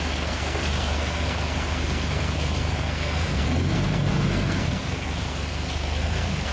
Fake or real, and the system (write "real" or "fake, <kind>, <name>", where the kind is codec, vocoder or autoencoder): fake, codec, SNAC